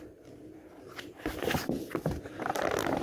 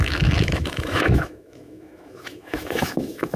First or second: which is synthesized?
second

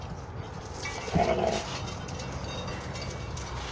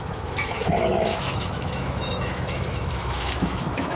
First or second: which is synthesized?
second